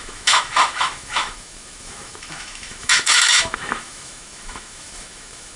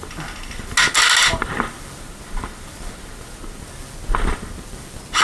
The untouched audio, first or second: second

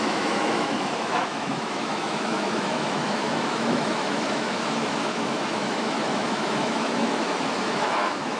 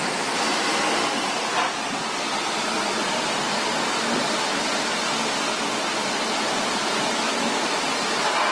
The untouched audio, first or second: second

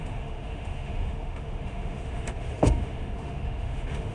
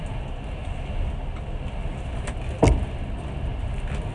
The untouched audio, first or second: second